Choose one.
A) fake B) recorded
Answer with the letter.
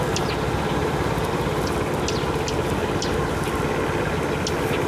B